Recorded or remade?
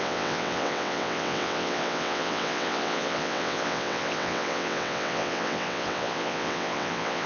remade